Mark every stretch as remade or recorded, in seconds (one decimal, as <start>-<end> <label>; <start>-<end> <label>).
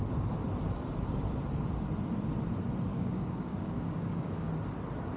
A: 0.0-2.9 recorded; 2.9-4.5 remade; 4.5-5.2 recorded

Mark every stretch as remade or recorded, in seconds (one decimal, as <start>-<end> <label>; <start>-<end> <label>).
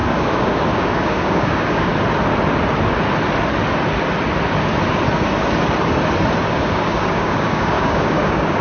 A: 0.0-1.9 remade; 1.9-6.4 recorded; 6.4-8.6 remade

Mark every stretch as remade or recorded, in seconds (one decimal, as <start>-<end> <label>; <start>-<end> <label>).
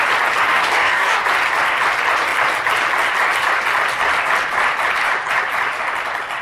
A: 0.0-0.5 recorded; 0.5-1.2 remade; 1.2-6.4 recorded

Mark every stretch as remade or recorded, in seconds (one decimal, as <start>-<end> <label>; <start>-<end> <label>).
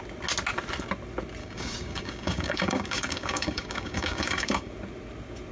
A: 0.0-1.4 recorded; 1.4-4.7 remade; 4.7-5.5 recorded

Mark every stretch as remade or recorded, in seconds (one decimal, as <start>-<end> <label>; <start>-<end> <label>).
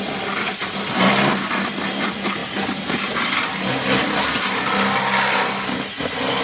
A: 0.0-6.4 recorded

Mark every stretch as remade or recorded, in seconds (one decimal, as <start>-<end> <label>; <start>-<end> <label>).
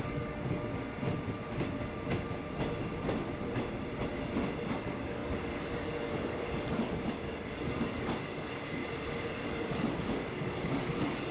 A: 0.0-0.7 remade; 0.7-4.1 recorded; 4.1-8.8 remade; 8.8-9.3 recorded; 9.3-11.3 remade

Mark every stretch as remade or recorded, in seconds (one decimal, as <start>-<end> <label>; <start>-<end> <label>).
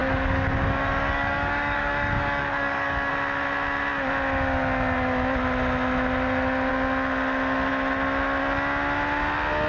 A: 0.0-3.1 remade; 3.1-9.7 recorded